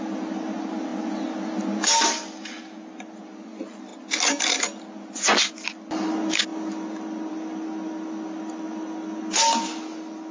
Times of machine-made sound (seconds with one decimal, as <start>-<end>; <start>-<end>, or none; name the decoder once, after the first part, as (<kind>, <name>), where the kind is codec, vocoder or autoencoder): none